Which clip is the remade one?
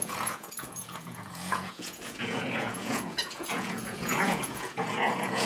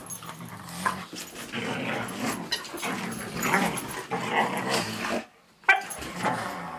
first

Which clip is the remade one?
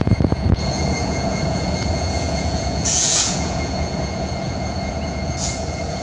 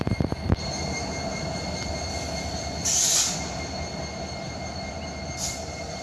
first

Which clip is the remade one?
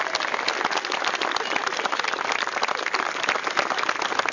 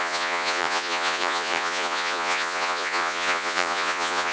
second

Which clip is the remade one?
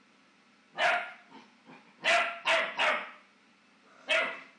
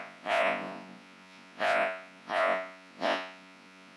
second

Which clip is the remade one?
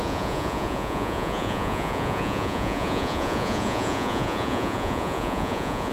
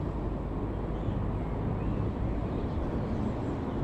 first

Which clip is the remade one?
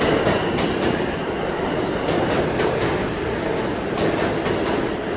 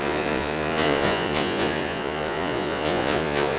second